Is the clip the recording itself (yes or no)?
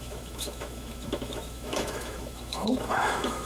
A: no